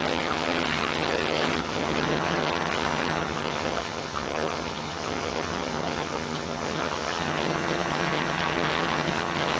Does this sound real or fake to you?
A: fake